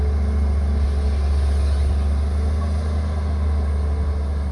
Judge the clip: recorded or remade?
recorded